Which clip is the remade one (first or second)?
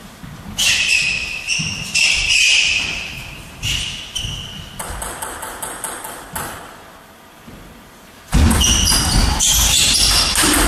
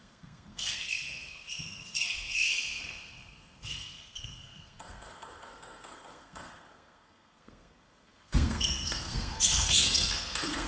second